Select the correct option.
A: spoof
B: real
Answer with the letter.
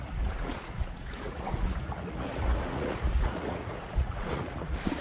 A